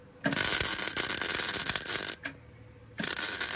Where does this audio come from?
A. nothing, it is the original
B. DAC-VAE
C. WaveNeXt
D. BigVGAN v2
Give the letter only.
A